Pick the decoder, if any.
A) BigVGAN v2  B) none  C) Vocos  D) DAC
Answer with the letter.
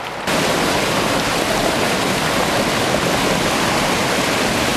A